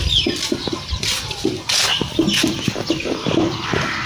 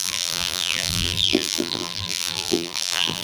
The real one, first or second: first